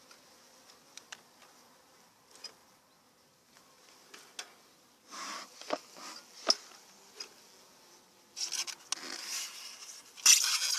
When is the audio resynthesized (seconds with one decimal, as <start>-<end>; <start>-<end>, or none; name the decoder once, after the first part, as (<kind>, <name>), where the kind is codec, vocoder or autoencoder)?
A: none